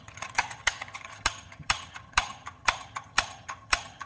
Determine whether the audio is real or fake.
fake